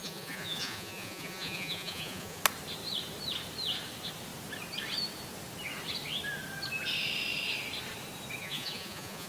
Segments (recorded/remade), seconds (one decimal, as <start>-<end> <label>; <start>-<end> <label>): 0.0-2.4 remade; 2.4-8.4 recorded; 8.4-9.3 remade